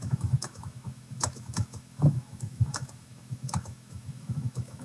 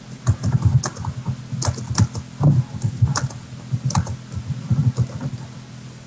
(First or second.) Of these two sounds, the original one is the second